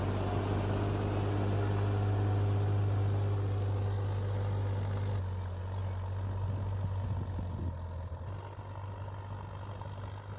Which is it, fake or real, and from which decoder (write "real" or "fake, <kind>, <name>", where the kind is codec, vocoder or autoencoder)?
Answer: real